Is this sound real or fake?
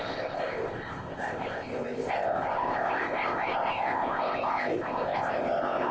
fake